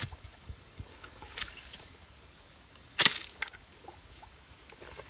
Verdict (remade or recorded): remade